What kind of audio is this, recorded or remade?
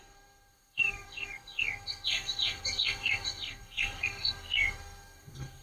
remade